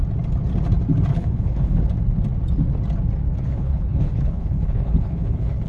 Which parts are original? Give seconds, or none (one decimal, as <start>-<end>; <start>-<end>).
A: 0.0-1.1; 1.8-3.4